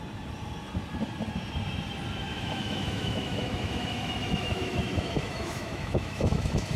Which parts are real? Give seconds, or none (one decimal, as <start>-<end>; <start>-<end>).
0.0-2.3